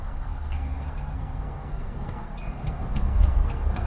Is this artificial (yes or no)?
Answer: yes